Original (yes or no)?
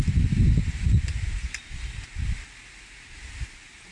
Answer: yes